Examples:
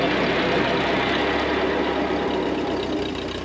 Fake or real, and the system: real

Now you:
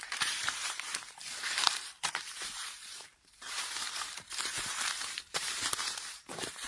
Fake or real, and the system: fake, vocoder, BigVGAN v2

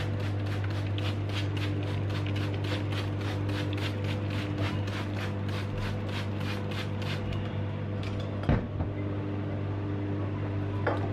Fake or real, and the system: real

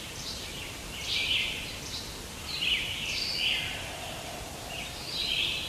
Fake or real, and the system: fake, vocoder, BigVGAN v2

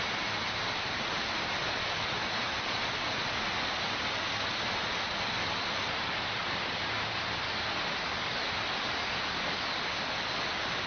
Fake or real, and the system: real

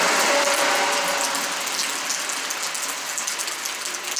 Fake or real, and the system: real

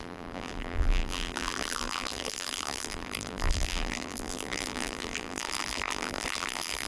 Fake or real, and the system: fake, vocoder, BigVGAN v2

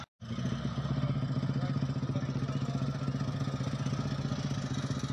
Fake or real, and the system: real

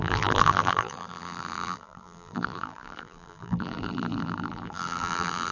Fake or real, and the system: fake, vocoder, BigVGAN v2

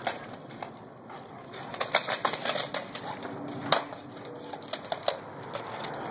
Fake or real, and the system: fake, vocoder, BigVGAN v2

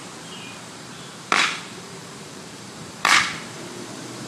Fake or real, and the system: fake, vocoder, BigVGAN v2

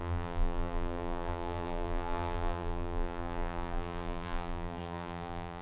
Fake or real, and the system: fake, vocoder, BigVGAN v2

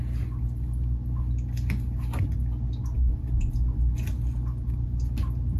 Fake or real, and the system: real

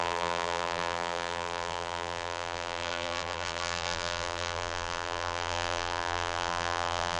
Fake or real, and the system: fake, vocoder, BigVGAN v2